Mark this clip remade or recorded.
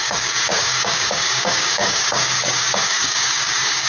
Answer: remade